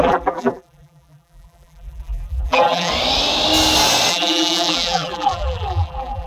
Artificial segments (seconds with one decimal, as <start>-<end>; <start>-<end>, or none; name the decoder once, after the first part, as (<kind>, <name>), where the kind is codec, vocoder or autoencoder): 0.0-2.9 (vocoder, BigVGAN v2); 4.1-6.3